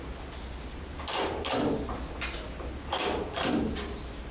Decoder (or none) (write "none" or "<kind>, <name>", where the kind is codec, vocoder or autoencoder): none